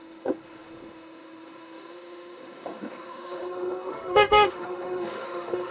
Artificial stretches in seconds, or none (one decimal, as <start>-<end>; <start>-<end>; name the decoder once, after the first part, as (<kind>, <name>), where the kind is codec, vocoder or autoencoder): 0.0-5.7 (autoencoder, DAC-VAE)